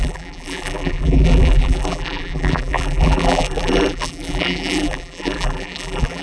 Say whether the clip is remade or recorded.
remade